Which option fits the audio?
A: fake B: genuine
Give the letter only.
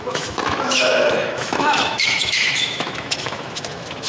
A